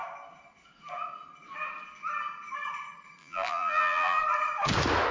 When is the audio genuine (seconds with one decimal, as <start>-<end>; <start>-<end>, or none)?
0.0-3.2; 4.2-5.1